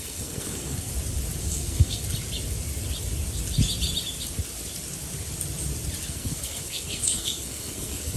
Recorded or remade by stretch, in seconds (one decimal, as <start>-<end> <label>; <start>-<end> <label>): 0.0-0.9 remade; 0.9-1.4 recorded; 1.4-2.0 remade; 2.0-6.0 recorded; 6.0-8.2 remade